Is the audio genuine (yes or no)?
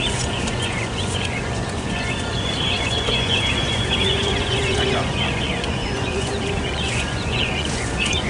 no